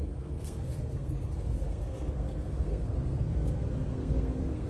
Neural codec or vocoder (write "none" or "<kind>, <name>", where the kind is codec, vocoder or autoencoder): codec, SNAC